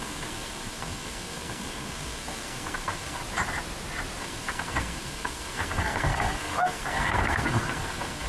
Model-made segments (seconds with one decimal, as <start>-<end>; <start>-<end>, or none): 0.0-3.2; 4.2-8.3